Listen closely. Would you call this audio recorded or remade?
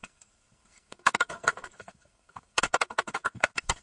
remade